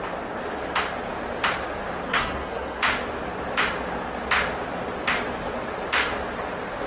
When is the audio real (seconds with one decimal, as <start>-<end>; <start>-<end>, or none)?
0.0-2.1; 2.8-6.9